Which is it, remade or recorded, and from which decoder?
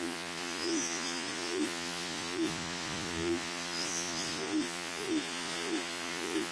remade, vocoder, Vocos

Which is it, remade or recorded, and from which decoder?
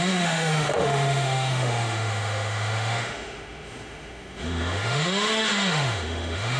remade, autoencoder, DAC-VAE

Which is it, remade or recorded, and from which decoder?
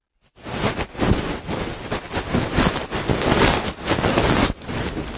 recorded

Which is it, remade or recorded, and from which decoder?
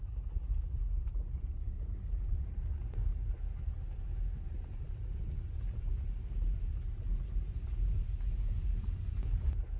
recorded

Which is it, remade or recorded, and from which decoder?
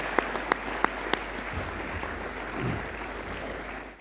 recorded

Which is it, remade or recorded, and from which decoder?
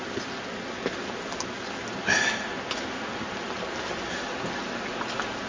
recorded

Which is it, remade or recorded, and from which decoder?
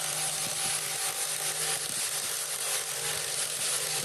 recorded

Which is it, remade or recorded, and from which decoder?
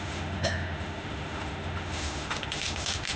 remade, autoencoder, DAC-VAE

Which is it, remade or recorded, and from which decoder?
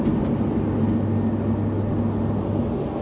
recorded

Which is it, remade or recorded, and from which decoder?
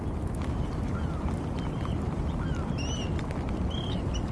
recorded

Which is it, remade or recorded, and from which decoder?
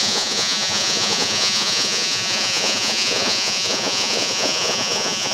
remade, vocoder, Vocos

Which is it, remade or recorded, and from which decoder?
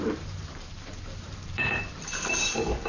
remade, vocoder, BigVGAN v2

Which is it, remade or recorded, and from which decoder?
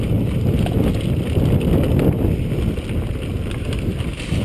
recorded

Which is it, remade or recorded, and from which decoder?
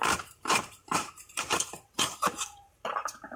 remade, vocoder, BigVGAN v2